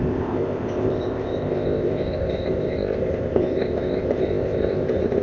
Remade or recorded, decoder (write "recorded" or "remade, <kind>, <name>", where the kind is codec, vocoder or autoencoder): remade, codec, ZipCodec